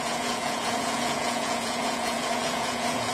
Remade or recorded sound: remade